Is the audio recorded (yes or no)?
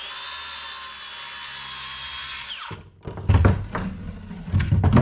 yes